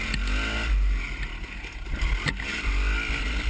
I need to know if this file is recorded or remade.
recorded